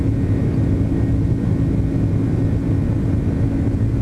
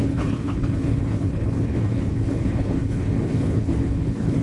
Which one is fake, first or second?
second